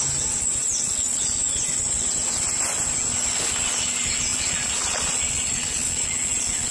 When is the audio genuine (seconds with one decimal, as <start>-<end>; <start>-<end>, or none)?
0.0-0.6; 1.2-4.3